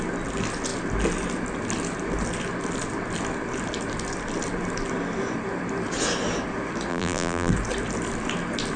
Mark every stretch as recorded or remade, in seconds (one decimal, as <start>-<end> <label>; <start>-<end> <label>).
0.0-6.9 recorded; 6.9-7.5 remade; 7.5-8.8 recorded